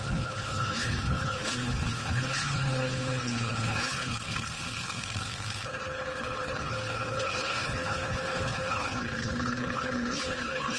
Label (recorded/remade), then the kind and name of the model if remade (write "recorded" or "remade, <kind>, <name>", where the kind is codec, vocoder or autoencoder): remade, codec, HILCodec